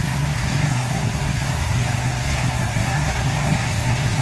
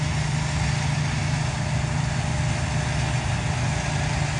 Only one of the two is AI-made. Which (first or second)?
first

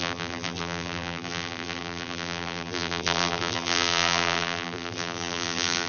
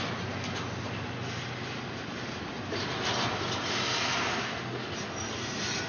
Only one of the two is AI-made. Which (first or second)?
first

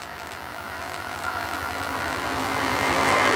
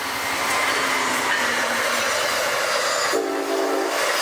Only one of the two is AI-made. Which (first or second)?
first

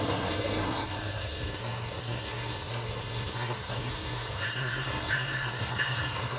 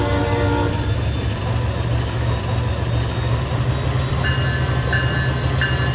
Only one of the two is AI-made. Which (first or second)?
first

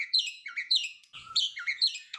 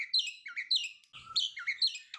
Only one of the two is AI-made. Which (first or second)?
first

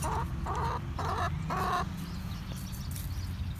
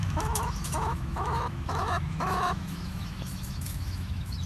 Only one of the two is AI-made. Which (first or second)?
second